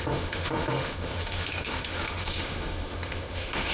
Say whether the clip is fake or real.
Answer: fake